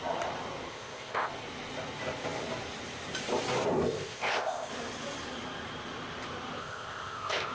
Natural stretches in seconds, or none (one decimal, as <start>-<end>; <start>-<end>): 0.0-0.7; 1.3-3.7; 4.7-6.6